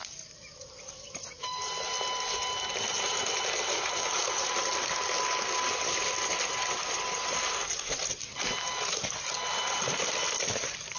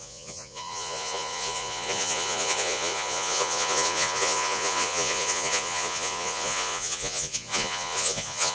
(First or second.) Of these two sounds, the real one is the first